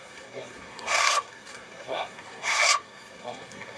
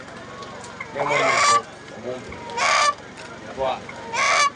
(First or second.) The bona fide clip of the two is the second